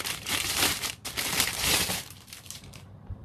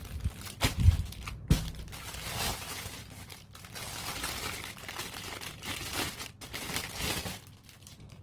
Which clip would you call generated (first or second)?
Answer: first